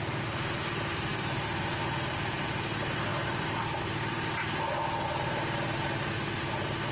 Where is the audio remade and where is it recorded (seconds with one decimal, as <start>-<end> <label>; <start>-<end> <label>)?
0.0-6.9 recorded